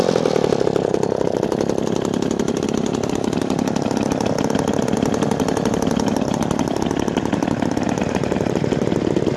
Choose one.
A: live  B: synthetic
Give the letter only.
A